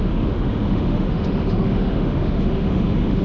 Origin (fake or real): fake